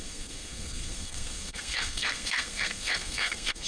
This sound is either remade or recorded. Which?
remade